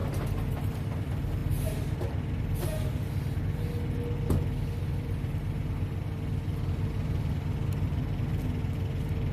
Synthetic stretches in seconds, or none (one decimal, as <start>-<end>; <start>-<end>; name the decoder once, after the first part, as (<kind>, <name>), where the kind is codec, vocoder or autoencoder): none